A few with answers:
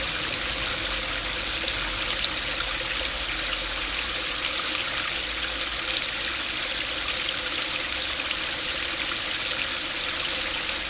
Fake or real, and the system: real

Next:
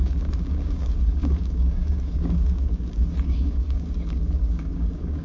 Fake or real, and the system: fake, codec, DAC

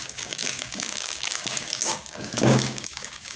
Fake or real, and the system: fake, codec, DAC